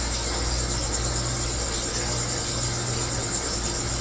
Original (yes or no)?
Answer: yes